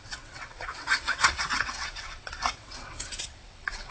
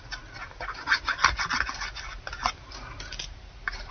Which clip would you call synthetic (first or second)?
first